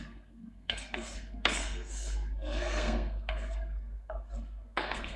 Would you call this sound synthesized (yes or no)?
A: yes